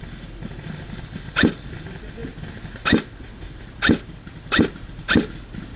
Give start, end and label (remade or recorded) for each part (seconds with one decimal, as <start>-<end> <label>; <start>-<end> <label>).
0.0-5.8 recorded